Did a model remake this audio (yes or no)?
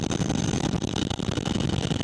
no